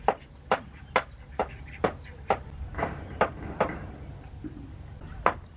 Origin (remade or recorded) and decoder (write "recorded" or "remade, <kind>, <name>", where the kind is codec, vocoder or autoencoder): recorded